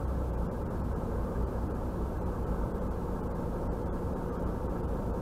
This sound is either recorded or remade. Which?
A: remade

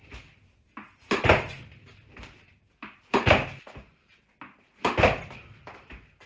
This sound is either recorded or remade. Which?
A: recorded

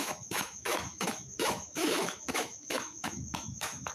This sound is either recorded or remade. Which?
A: remade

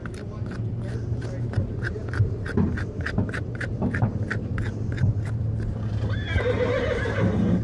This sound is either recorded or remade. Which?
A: remade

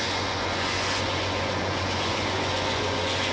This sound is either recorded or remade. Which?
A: remade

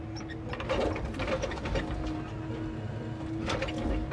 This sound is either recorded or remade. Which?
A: recorded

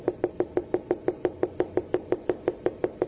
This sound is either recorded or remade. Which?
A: recorded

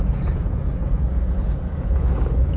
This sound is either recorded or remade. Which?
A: remade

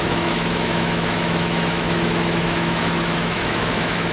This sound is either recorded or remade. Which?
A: remade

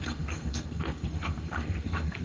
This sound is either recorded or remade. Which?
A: remade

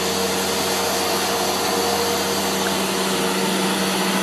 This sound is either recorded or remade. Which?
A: recorded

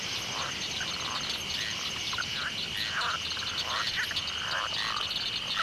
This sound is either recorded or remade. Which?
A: recorded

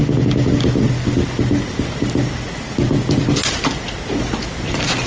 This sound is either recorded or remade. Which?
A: recorded